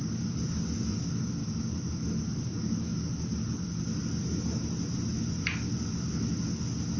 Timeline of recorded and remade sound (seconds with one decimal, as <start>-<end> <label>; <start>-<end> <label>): 0.0-7.0 recorded